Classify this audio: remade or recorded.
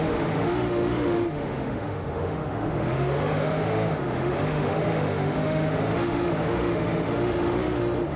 remade